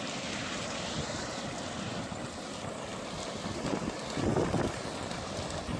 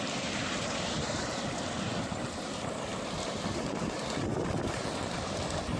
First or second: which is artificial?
second